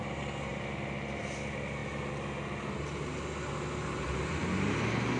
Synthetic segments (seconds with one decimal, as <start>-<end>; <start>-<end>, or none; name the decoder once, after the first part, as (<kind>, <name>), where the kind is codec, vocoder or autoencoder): none